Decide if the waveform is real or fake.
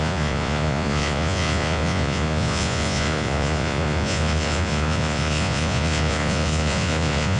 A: fake